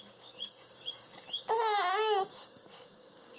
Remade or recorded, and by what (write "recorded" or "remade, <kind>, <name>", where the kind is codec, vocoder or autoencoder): remade, codec, DAC